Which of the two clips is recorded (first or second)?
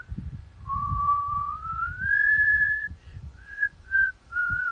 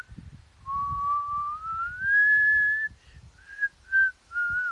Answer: second